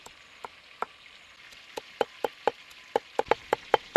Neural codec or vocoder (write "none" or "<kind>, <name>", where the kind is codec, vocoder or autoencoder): none